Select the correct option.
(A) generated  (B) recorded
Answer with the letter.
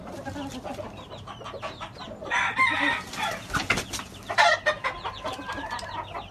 B